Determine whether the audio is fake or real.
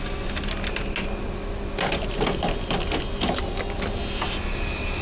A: real